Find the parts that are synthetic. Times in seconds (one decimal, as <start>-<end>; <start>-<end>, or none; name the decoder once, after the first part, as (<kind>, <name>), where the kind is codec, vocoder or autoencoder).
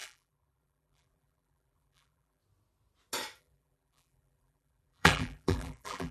0.0-2.4 (vocoder, BigVGAN v2); 3.4-6.1